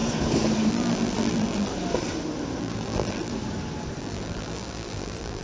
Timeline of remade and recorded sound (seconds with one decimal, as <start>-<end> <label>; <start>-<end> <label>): 0.0-0.7 recorded; 0.7-1.7 remade; 1.7-2.6 recorded; 2.6-3.3 remade; 3.3-4.0 recorded; 4.0-5.4 remade